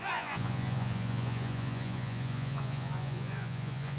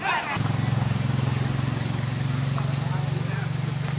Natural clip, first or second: second